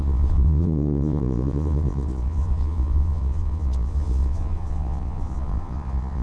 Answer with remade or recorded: remade